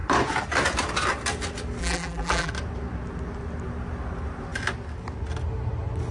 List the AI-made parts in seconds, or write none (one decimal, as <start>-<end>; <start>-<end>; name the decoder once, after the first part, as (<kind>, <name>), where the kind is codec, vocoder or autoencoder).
1.8-2.5 (vocoder, BigVGAN v2)